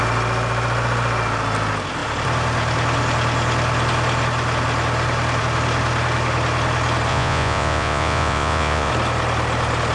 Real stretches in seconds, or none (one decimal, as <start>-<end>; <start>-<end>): 0.0-7.1; 8.9-9.9